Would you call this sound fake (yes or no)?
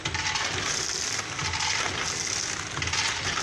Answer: no